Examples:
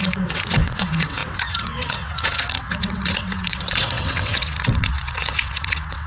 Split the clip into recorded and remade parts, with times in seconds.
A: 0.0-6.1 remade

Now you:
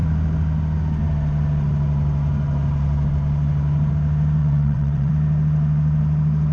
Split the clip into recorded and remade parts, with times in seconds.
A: 0.0-4.4 recorded; 4.4-5.1 remade; 5.1-6.5 recorded